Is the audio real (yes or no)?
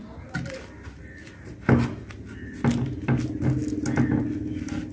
yes